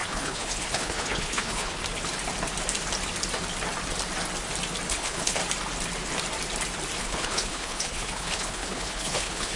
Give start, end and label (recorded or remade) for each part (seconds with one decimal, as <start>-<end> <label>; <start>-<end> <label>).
0.0-1.8 remade; 1.8-4.9 recorded; 4.9-5.4 remade; 5.4-7.0 recorded; 7.0-9.6 remade